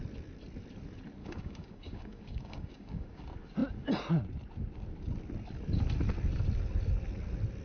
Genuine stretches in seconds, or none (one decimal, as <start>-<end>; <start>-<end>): 0.0-1.2; 3.2-7.6